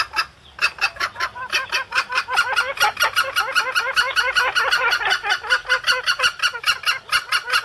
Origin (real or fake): real